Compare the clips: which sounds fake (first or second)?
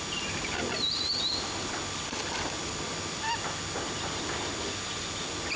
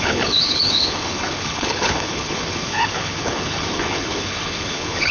second